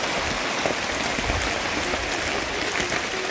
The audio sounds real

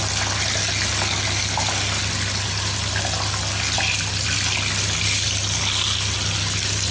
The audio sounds real